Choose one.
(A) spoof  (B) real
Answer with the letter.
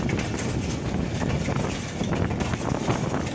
B